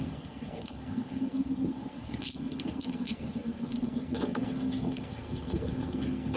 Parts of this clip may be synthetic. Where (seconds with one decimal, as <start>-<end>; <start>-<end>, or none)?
0.0-6.4

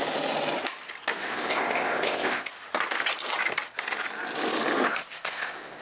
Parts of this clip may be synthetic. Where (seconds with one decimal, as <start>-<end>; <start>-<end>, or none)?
1.2-2.5; 4.9-5.8

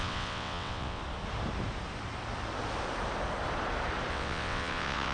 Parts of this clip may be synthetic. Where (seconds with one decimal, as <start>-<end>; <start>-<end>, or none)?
0.0-1.0; 4.1-5.1

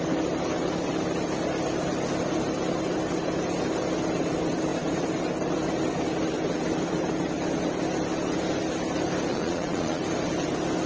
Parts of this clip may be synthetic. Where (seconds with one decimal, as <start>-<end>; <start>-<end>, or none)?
9.3-10.0

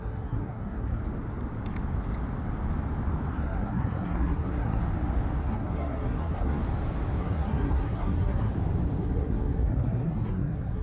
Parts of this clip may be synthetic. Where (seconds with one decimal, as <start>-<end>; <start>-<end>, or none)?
0.0-1.0; 3.3-4.8; 5.4-6.6; 7.2-8.5; 9.0-10.8

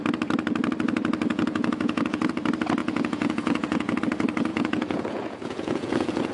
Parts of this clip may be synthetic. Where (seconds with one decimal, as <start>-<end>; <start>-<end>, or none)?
1.3-2.2; 2.8-4.0; 4.5-6.3

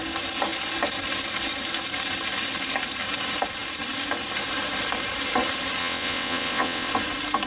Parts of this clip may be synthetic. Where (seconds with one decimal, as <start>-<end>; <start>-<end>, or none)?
5.8-6.9